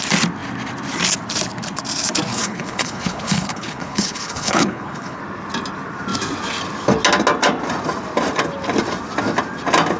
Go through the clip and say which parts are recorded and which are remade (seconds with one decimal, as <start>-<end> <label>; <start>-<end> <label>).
0.0-2.3 recorded; 2.3-5.2 remade; 5.2-10.0 recorded